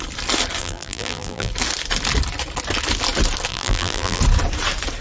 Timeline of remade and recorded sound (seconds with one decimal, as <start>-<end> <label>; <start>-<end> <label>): 0.0-0.6 recorded; 0.6-1.5 remade; 1.5-3.5 recorded; 3.5-4.2 remade; 4.2-5.0 recorded